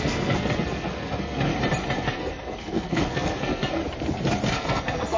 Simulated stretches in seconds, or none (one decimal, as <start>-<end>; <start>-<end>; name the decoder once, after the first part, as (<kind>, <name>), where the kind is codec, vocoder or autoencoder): 0.0-1.5 (codec, SNAC); 2.0-3.8; 4.5-5.2